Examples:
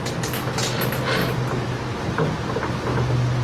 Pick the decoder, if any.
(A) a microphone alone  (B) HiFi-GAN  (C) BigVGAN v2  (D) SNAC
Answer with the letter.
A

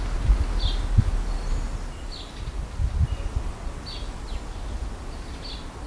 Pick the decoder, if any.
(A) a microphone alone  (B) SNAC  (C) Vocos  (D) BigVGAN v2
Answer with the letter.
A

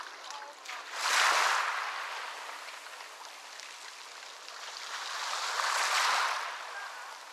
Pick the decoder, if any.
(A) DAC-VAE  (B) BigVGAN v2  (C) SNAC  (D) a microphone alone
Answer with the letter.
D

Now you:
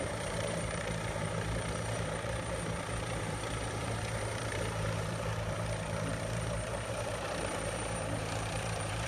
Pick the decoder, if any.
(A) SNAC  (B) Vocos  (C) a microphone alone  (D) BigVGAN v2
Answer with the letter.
D